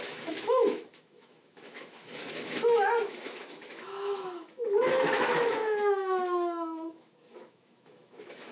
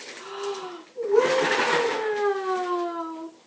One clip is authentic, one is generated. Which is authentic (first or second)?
second